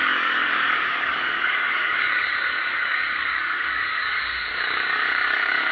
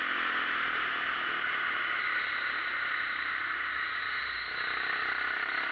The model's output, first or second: first